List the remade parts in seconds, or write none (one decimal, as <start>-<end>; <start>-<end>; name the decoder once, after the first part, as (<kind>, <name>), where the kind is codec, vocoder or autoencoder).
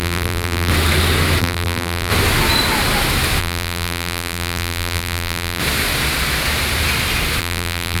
0.0-0.7 (vocoder, BigVGAN v2); 1.4-2.1; 3.4-5.6; 7.4-8.0